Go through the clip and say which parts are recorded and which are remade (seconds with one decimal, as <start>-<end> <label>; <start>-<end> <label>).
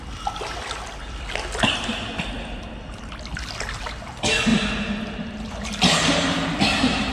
0.0-4.5 recorded; 4.5-7.1 remade